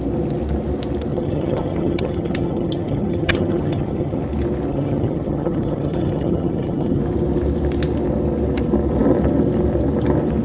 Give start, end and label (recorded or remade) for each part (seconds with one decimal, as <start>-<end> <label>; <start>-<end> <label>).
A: 0.0-1.1 recorded; 1.1-4.2 remade; 4.2-4.7 recorded; 4.7-7.0 remade; 7.0-10.4 recorded